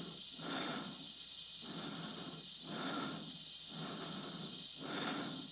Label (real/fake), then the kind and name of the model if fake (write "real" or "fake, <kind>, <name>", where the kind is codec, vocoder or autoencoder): real